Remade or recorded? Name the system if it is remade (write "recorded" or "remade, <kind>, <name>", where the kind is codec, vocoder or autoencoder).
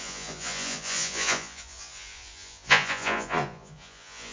remade, vocoder, Vocos